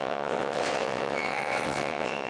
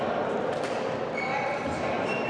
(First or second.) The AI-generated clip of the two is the first